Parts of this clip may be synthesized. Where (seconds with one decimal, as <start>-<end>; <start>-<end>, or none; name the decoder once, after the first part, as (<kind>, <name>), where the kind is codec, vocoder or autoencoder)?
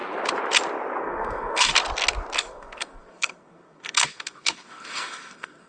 1.0-1.7 (codec, SNAC); 2.4-5.7